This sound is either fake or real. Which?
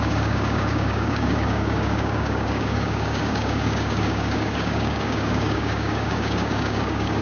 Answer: fake